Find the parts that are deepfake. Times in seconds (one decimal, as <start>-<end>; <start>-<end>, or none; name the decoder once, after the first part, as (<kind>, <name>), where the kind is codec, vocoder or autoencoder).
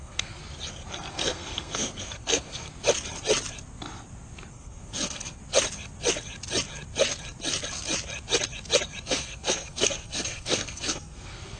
0.0-0.4 (codec, SNAC); 1.1-2.7; 4.5-5.4; 9.0-11.6